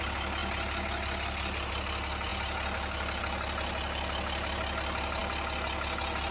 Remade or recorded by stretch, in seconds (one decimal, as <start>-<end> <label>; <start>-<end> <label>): 0.0-0.4 recorded; 0.4-1.7 remade; 1.7-6.3 recorded